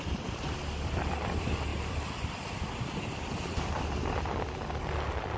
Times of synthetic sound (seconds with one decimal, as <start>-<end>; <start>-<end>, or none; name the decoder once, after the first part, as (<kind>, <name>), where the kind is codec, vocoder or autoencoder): none

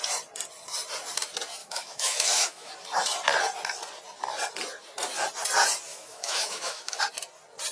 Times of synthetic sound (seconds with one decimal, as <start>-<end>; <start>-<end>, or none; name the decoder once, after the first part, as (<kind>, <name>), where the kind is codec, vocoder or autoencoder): 1.6-2.7 (autoencoder, DAC-VAE); 5.9-7.0